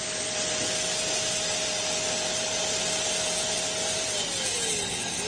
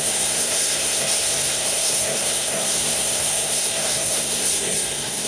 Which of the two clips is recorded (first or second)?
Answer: first